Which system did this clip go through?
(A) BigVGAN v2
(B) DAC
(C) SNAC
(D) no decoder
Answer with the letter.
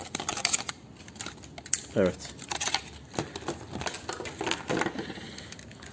D